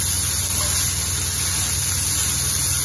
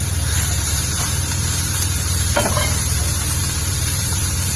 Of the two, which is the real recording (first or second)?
first